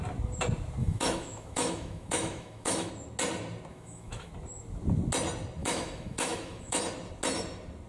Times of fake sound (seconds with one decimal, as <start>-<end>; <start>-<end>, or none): 0.8-2.9; 3.7-4.3; 5.6-6.8